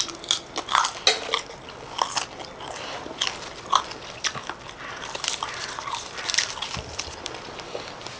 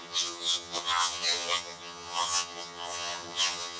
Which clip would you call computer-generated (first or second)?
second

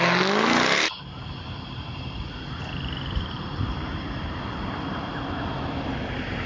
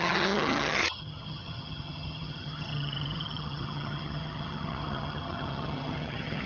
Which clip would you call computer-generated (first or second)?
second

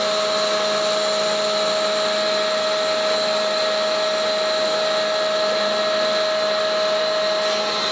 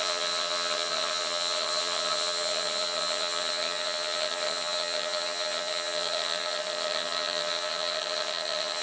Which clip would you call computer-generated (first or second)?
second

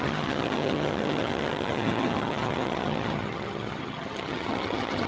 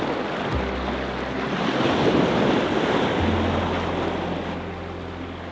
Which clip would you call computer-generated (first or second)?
first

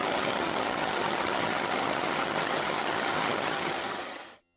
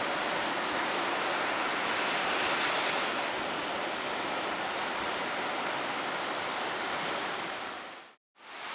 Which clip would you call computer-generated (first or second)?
first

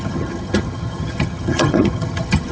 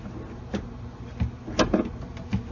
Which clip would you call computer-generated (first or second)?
first